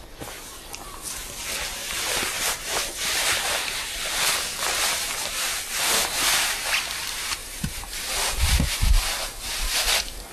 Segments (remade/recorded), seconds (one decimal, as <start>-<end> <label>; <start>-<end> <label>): 0.0-1.8 recorded; 1.8-5.8 remade; 5.8-7.4 recorded; 7.4-8.1 remade; 8.1-10.3 recorded